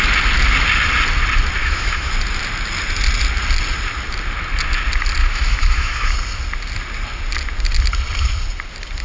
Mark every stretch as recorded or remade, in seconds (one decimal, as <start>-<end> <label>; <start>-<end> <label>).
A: 0.0-1.6 recorded; 1.6-2.1 remade; 2.1-5.2 recorded; 5.2-6.1 remade; 6.1-9.0 recorded